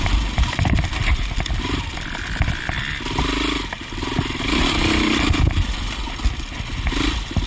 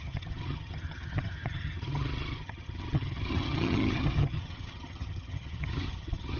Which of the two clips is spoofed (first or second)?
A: second